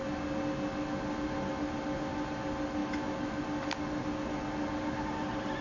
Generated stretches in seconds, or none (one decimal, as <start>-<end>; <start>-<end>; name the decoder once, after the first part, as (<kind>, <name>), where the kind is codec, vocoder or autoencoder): 2.8-3.4 (autoencoder, DAC-VAE)